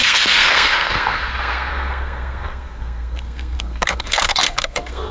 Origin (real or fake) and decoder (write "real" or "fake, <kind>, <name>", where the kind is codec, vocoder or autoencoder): fake, codec, SNAC